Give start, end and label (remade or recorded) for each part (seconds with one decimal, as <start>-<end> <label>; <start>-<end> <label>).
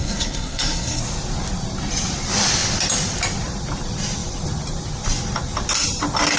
0.0-1.0 remade; 1.0-6.4 recorded